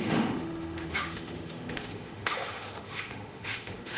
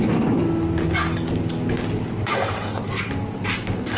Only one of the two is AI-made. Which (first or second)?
first